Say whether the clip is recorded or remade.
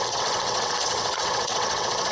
remade